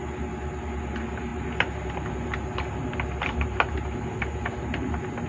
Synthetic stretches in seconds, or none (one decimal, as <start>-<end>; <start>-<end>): none